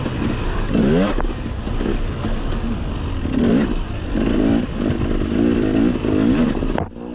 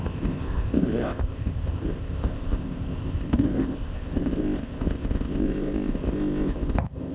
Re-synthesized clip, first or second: second